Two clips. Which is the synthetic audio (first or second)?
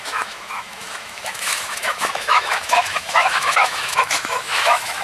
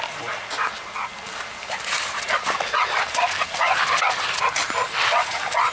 first